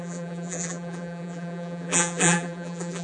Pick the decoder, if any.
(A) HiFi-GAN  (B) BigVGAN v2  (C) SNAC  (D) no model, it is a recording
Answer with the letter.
B